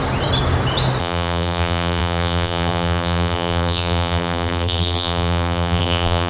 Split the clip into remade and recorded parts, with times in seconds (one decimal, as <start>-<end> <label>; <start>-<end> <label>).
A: 0.0-1.0 recorded; 1.0-6.3 remade